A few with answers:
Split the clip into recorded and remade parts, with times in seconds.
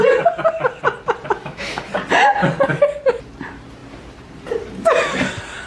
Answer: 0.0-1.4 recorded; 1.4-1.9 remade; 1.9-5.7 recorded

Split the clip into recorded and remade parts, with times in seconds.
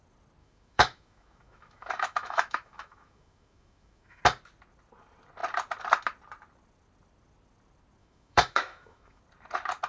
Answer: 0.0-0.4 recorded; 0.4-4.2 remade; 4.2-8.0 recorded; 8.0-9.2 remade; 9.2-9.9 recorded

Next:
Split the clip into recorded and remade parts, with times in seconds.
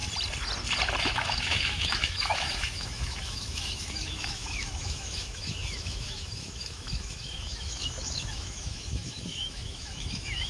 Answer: 0.0-1.0 recorded; 1.0-10.5 remade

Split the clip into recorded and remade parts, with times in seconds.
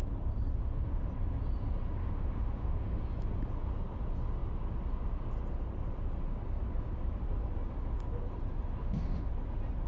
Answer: 0.0-0.6 recorded; 0.6-1.1 remade; 1.1-2.0 recorded; 2.0-3.0 remade; 3.0-8.8 recorded; 8.8-9.3 remade; 9.3-9.9 recorded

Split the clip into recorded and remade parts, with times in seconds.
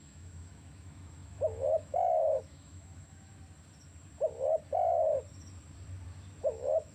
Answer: 0.0-3.3 remade; 3.3-6.4 recorded; 6.4-6.9 remade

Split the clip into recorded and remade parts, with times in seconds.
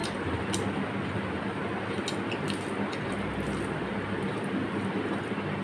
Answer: 0.0-5.6 recorded